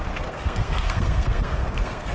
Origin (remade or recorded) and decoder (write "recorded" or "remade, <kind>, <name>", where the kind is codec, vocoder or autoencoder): remade, codec, SNAC